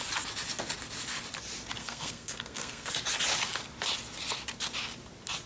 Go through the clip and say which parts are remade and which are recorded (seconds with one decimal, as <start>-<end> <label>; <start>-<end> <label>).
0.0-1.8 recorded; 1.8-2.9 remade; 2.9-5.5 recorded

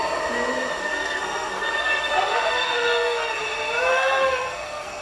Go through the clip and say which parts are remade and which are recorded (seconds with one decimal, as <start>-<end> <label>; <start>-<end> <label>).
0.0-0.8 recorded; 0.8-3.4 remade; 3.4-3.9 recorded; 3.9-5.0 remade